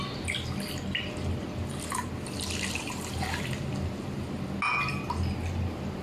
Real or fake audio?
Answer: real